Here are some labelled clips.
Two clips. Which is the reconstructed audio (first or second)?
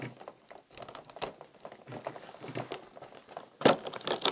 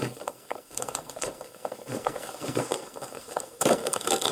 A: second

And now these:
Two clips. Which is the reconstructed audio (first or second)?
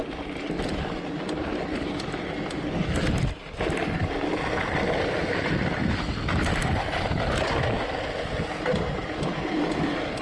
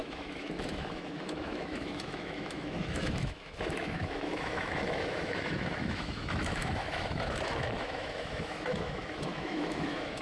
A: second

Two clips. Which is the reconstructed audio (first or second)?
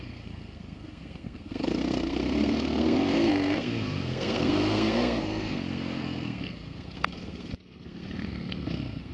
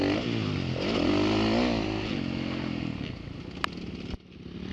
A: first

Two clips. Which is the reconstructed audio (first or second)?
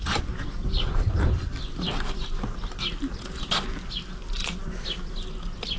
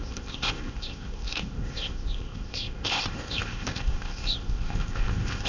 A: second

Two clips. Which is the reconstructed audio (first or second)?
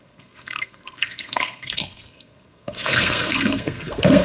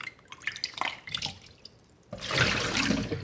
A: first